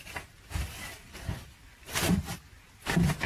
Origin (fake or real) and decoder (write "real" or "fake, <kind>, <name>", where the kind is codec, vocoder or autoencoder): real